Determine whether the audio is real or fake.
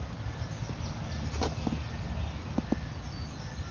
real